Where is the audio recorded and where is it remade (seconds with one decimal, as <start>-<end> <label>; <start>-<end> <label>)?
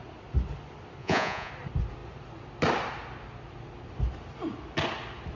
0.0-1.0 recorded; 1.0-1.5 remade; 1.5-5.3 recorded